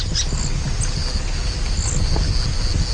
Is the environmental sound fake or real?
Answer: real